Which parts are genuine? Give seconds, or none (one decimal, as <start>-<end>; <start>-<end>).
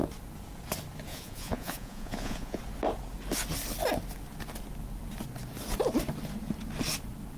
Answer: 0.0-1.1; 2.6-7.4